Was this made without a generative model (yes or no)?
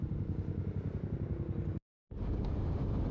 yes